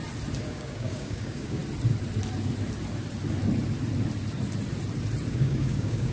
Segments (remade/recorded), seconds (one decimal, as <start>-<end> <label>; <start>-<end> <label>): 0.0-0.5 recorded; 0.5-1.6 remade; 1.6-5.3 recorded; 5.3-6.1 remade